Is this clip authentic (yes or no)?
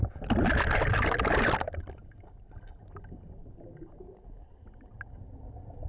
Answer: yes